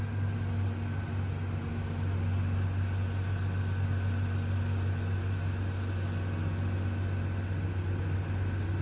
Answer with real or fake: real